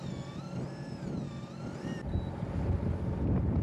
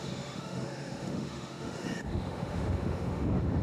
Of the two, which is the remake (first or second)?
second